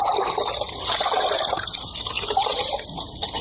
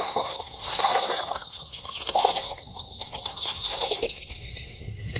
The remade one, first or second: second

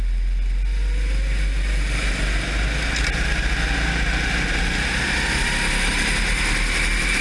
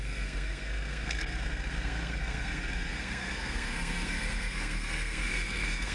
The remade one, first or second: second